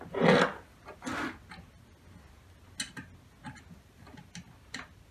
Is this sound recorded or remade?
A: recorded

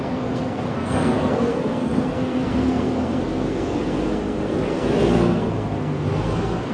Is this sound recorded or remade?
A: remade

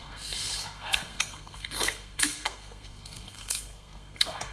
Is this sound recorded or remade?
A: remade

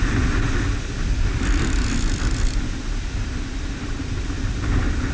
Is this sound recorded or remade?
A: recorded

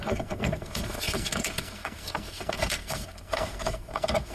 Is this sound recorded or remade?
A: remade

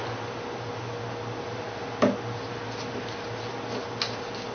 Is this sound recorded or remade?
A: recorded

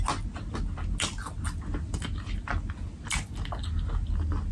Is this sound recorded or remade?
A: recorded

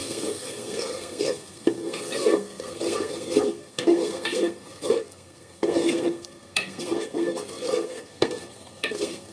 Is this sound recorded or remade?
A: remade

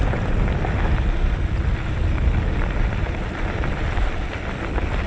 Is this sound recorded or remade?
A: recorded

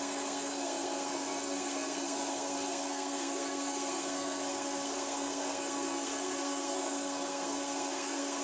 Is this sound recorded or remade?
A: remade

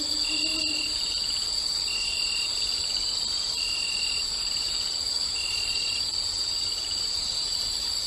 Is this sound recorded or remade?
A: recorded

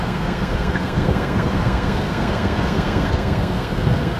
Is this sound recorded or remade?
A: remade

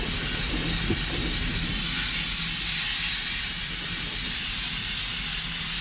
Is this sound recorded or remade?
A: recorded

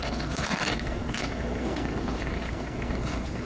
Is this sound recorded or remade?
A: remade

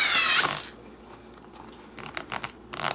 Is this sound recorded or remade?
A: recorded